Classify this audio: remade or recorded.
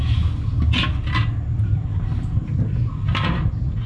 recorded